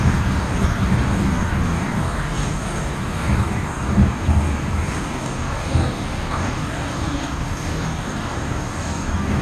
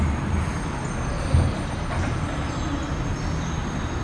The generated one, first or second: first